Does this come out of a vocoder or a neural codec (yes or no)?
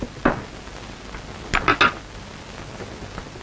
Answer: no